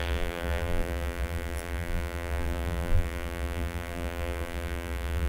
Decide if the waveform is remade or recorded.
remade